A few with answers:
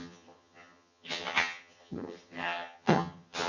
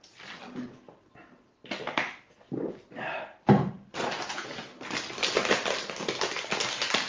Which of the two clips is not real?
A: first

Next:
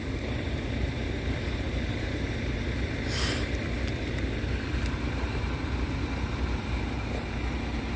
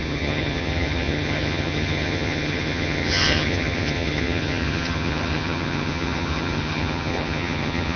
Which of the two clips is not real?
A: second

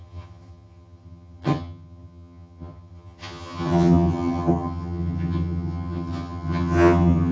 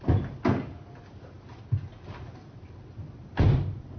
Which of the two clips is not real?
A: first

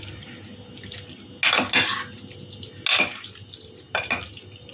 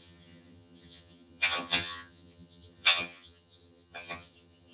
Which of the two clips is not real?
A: second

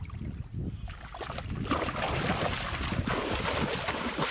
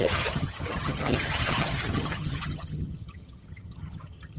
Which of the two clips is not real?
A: second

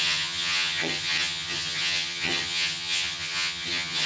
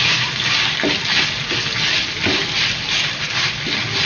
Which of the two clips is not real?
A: first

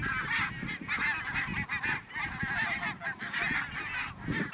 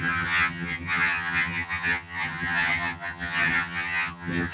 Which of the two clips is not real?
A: second